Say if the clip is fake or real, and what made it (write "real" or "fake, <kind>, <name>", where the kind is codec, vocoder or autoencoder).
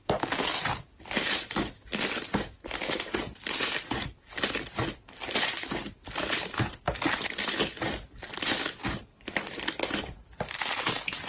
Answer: real